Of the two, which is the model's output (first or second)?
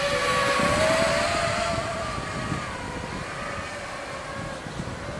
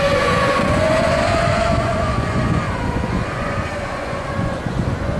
second